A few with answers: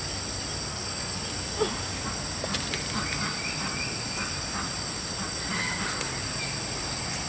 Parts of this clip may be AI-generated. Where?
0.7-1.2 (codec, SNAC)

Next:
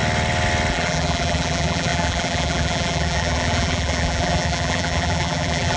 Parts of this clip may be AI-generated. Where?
0.7-5.8 (vocoder, BigVGAN v2)

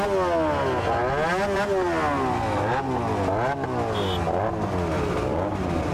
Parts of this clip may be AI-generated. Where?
none

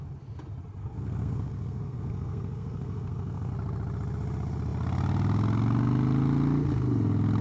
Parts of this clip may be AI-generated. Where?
0.8-3.5 (codec, SNAC)